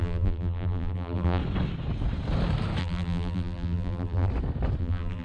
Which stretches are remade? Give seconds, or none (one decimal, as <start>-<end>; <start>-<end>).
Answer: 0.0-1.4; 2.8-4.3; 4.8-5.2